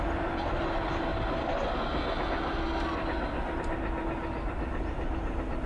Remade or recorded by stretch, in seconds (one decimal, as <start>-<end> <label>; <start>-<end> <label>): 0.0-5.7 recorded